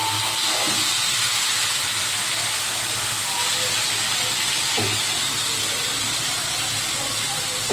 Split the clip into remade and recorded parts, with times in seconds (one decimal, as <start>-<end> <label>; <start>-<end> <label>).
0.0-0.9 recorded; 0.9-2.4 remade; 2.4-5.6 recorded; 5.6-7.7 remade